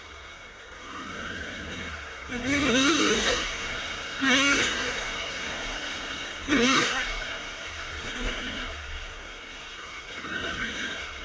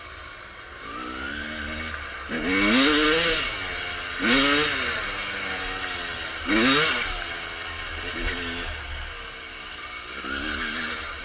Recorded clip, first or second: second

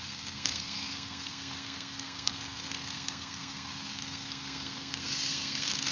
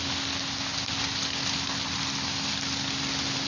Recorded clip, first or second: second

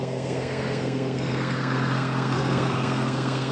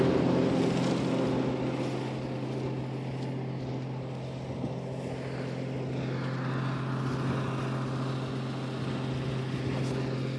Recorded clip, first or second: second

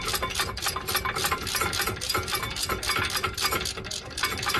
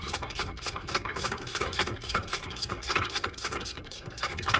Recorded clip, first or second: first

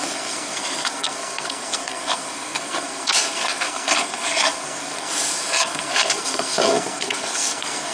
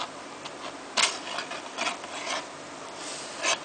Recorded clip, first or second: second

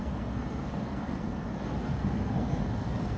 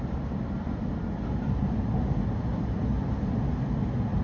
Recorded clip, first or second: second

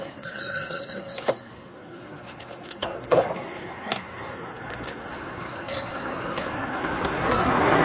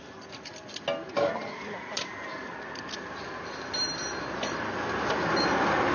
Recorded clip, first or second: second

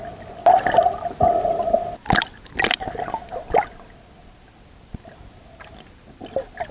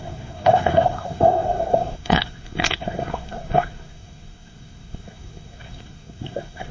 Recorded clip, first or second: first